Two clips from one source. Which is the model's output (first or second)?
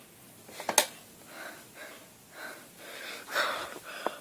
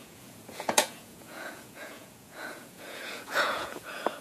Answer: second